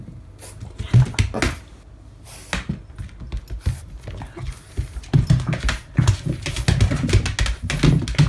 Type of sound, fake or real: real